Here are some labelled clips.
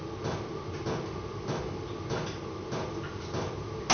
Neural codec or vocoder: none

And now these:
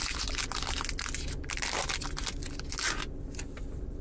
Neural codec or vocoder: none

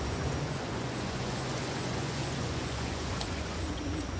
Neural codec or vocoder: vocoder, Vocos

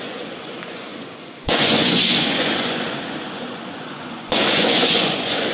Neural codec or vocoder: vocoder, Vocos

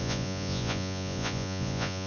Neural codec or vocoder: vocoder, Vocos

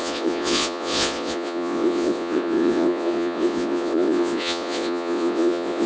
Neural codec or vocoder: vocoder, Vocos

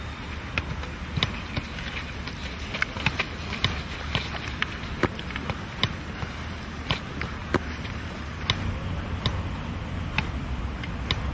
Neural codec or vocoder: none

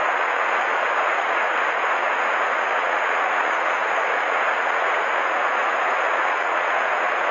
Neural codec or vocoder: vocoder, Vocos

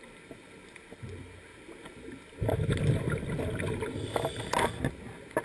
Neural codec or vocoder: none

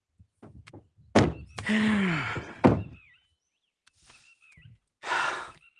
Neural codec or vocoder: none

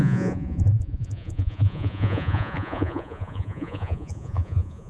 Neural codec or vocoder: vocoder, Vocos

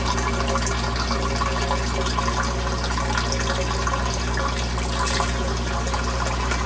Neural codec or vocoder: none